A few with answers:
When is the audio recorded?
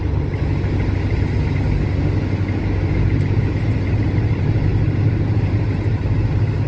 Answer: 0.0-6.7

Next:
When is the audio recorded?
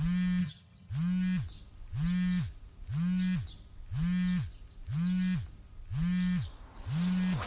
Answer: 0.0-0.4; 0.9-7.5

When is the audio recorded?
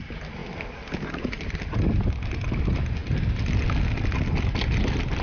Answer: 0.0-5.2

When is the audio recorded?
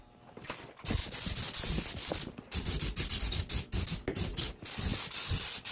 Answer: 0.0-4.9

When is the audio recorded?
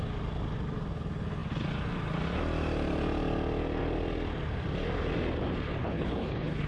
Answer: 0.0-5.8